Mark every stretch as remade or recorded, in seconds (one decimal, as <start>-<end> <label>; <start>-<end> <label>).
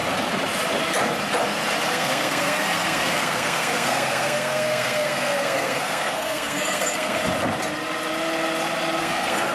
0.0-1.9 recorded; 1.9-7.2 remade; 7.2-9.0 recorded; 9.0-9.5 remade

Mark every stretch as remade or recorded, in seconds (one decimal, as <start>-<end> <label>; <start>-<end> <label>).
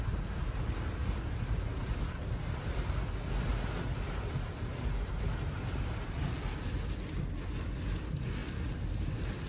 0.0-9.5 recorded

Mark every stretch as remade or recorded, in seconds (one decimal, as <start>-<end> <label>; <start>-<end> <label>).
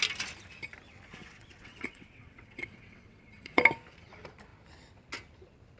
0.0-1.2 recorded; 1.2-3.6 remade; 3.6-5.8 recorded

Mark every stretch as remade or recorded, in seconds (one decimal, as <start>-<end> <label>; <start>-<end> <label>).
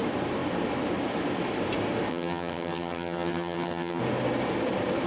0.0-2.1 recorded; 2.1-4.0 remade; 4.0-5.1 recorded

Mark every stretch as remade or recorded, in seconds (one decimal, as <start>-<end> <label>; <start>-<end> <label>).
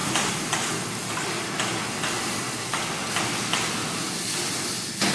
0.0-5.1 recorded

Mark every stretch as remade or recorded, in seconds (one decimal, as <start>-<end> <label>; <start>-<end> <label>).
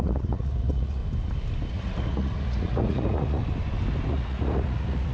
0.0-1.0 remade; 1.0-1.7 recorded; 1.7-3.4 remade; 3.4-4.1 recorded; 4.1-5.1 remade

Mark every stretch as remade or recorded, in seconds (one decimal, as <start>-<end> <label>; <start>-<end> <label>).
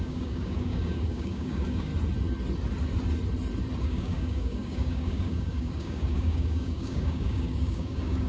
0.0-1.9 remade; 1.9-3.8 recorded; 3.8-8.3 remade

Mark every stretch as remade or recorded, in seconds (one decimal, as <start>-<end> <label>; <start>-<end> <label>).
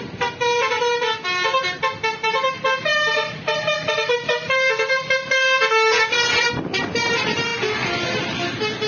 0.0-8.9 recorded